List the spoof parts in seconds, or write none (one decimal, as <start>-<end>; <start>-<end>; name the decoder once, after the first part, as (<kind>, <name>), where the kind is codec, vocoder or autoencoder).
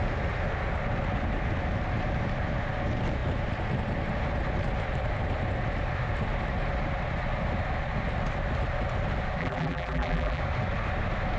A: 9.4-10.4 (vocoder, BigVGAN v2)